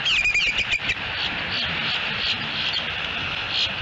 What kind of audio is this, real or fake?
real